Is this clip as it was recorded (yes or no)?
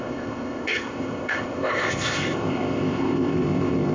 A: no